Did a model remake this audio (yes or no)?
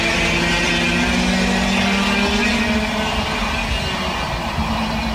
no